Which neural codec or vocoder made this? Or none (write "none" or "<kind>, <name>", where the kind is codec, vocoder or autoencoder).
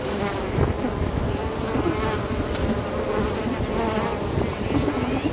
none